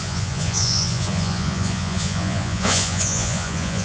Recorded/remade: remade